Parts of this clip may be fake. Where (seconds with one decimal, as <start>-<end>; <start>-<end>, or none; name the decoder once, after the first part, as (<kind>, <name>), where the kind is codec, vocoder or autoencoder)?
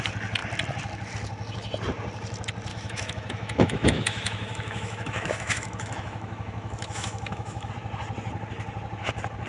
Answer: 2.7-7.7 (autoencoder, DAC-VAE)